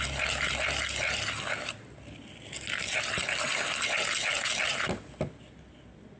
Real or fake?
real